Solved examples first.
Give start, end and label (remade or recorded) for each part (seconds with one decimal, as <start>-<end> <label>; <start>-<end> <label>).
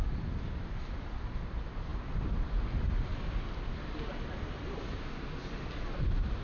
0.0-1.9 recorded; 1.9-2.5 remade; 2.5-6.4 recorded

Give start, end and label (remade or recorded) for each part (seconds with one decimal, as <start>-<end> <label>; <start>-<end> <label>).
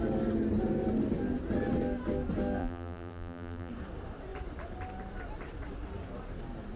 0.0-2.6 recorded; 2.6-3.7 remade; 3.7-6.8 recorded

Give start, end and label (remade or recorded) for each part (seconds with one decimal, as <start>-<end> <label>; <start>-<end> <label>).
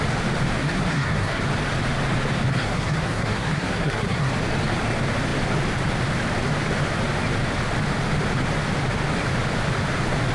0.0-0.6 recorded; 0.6-1.4 remade; 1.4-2.5 recorded; 2.5-4.3 remade; 4.3-10.3 recorded